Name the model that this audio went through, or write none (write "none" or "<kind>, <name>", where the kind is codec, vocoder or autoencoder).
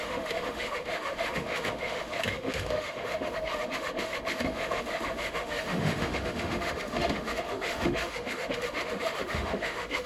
autoencoder, DAC-VAE